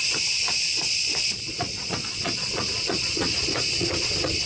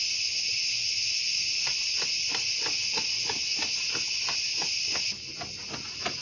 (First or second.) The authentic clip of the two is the second